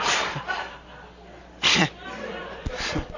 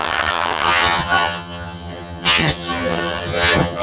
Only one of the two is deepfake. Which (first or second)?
second